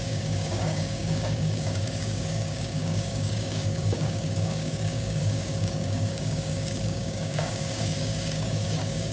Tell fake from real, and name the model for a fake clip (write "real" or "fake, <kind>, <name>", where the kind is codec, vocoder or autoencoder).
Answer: fake, codec, DAC